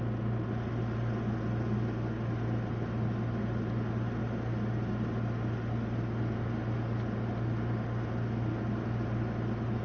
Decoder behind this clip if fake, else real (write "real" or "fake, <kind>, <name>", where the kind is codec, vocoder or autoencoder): real